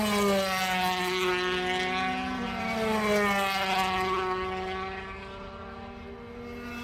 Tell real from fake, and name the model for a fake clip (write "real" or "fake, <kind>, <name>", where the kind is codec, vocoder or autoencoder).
real